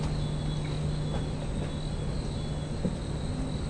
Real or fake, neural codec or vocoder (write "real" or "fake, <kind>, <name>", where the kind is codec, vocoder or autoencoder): real